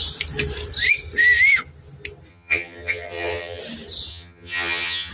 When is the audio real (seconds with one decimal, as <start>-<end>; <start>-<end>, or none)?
0.0-2.3; 3.6-4.1